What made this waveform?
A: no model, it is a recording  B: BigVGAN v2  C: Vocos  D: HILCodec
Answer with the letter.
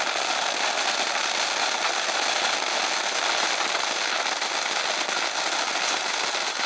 A